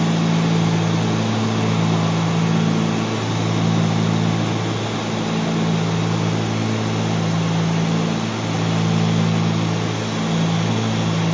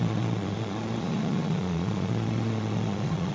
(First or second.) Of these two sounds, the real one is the first